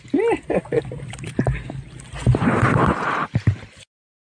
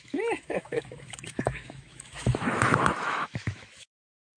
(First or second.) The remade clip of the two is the second